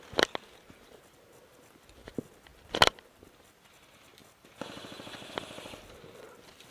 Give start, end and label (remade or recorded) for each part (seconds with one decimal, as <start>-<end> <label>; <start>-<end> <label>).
0.0-6.7 recorded